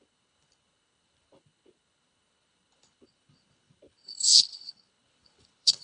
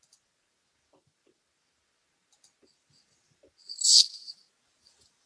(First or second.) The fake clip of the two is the first